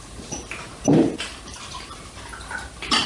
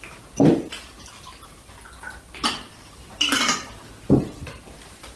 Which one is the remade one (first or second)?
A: first